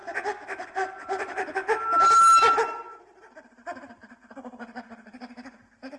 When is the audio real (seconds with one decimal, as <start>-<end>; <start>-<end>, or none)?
none